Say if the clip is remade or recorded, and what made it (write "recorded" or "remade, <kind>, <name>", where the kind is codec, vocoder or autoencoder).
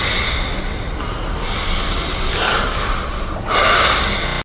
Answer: recorded